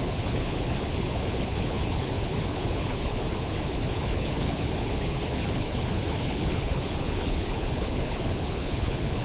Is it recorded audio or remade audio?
remade